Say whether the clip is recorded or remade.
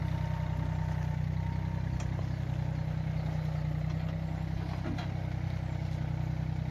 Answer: recorded